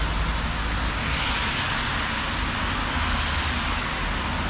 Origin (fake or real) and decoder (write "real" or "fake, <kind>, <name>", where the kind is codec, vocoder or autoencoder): real